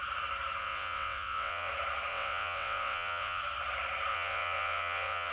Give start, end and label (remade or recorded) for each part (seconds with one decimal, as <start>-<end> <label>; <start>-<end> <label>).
0.0-0.6 recorded; 0.6-1.7 remade; 1.7-2.1 recorded; 2.1-3.4 remade; 3.4-4.1 recorded; 4.1-5.3 remade